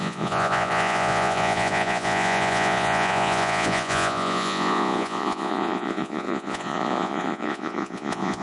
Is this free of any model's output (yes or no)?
no